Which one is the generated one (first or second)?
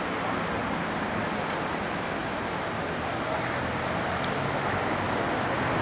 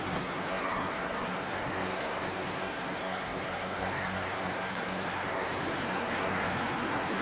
second